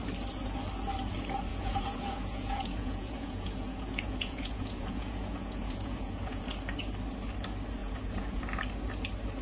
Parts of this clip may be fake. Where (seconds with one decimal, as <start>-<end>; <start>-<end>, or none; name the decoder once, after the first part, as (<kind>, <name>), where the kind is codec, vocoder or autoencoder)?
1.5-6.4 (vocoder, Vocos); 7.8-8.4